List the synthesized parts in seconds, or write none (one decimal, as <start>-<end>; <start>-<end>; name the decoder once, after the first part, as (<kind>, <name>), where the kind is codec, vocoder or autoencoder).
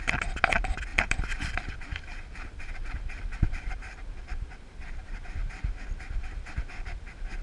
0.9-5.2 (vocoder, BigVGAN v2)